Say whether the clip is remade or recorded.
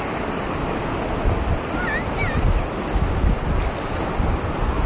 recorded